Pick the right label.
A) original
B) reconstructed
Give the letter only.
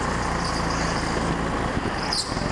A